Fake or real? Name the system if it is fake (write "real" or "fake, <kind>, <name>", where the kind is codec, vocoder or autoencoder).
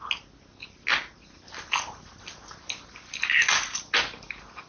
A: real